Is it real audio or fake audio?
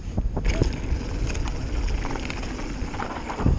real